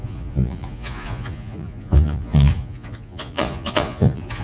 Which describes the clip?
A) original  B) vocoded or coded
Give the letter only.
B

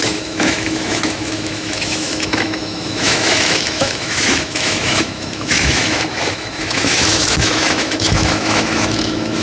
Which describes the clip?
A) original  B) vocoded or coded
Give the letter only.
B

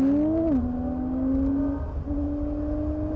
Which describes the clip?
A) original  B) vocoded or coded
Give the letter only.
A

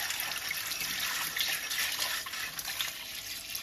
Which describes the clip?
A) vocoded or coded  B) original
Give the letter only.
B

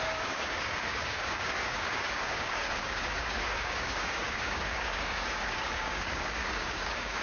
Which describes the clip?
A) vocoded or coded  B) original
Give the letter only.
A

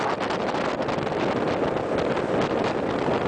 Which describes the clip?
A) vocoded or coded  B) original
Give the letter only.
B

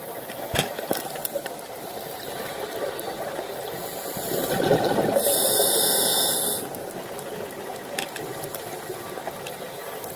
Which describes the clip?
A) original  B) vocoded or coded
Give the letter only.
A